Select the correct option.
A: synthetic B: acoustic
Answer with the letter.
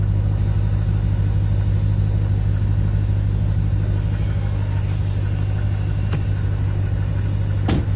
B